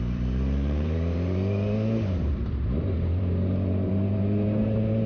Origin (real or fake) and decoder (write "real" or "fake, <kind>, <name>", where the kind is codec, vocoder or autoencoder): fake, vocoder, BigVGAN v2